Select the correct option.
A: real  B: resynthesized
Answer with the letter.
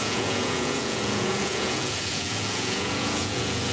B